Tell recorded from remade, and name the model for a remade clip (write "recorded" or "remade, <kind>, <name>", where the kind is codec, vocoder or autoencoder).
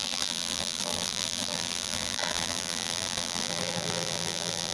remade, vocoder, BigVGAN v2